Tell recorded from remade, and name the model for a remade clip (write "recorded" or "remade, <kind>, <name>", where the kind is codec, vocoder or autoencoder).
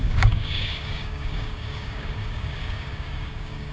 remade, codec, DAC